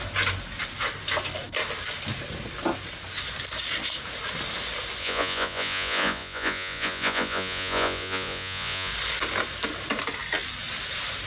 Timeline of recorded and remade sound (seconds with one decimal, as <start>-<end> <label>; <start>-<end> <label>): 0.0-5.0 recorded; 5.0-8.9 remade; 8.9-11.3 recorded